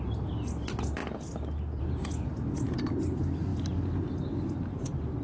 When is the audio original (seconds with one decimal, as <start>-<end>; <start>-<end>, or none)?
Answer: 0.0-5.2